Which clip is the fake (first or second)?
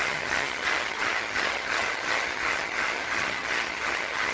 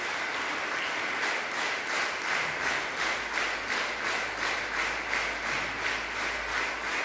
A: first